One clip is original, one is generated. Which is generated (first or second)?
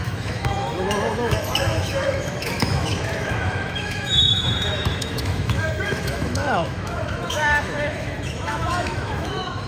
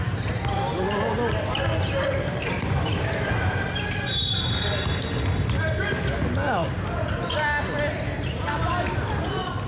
first